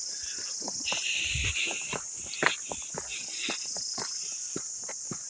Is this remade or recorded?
recorded